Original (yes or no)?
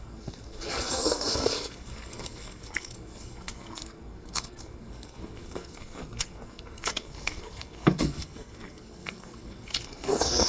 no